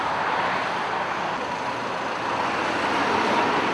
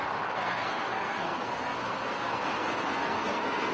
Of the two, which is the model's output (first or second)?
second